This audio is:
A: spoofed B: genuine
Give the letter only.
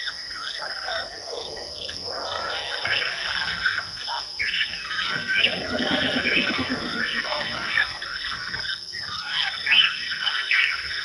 A